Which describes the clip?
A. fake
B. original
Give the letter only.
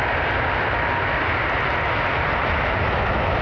B